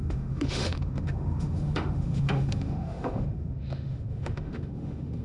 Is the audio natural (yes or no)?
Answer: no